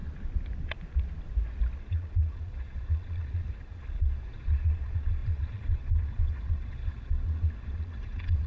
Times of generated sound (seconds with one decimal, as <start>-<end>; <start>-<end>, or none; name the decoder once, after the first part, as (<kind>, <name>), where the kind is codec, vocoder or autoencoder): 1.8-8.5 (vocoder, Vocos)